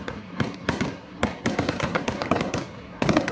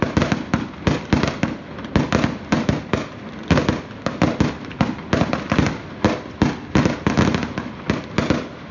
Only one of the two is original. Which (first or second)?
second